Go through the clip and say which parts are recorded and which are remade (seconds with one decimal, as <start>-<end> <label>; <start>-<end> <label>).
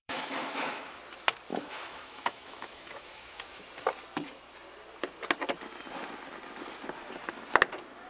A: 0.0-1.0 remade; 1.0-1.5 recorded; 1.5-3.6 remade; 3.6-8.1 recorded